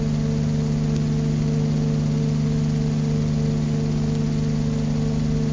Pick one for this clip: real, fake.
real